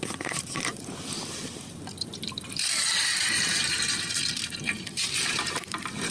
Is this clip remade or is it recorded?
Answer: remade